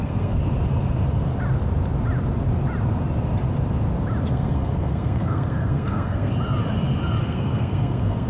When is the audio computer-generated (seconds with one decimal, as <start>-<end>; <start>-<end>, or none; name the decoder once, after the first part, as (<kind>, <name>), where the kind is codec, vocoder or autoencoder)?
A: 0.0-0.4 (codec, SNAC); 4.3-6.3; 7.2-8.3